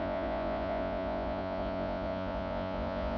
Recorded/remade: remade